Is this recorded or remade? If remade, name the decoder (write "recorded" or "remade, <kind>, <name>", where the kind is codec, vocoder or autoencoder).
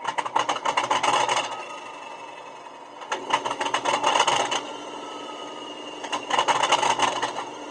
recorded